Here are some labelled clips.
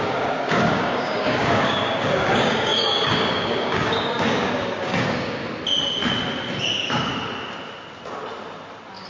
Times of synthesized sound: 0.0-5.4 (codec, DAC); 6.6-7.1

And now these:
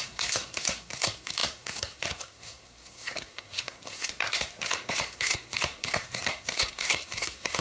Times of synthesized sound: 0.0-7.6 (codec, SNAC)

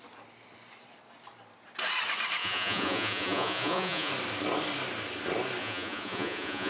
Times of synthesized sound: 2.4-4.1 (vocoder, Vocos); 5.6-6.7

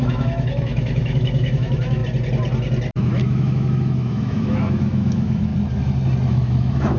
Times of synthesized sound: 0.0-2.0 (autoencoder, DAC-VAE); 2.9-5.5; 6.3-7.0

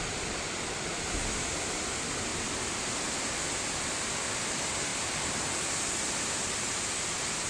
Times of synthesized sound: 0.9-1.8 (vocoder, BigVGAN v2)